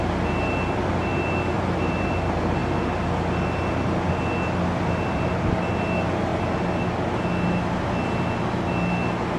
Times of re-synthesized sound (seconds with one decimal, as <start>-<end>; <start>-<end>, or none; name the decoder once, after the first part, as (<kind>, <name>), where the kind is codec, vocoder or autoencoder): 1.1-2.1 (vocoder, BigVGAN v2)